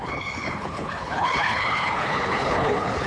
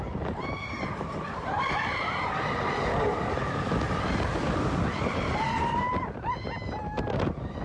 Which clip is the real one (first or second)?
second